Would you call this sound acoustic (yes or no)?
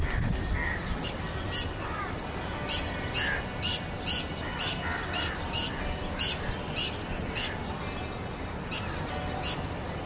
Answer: yes